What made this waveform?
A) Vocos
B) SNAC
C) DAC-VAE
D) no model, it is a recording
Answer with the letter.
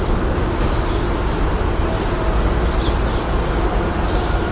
D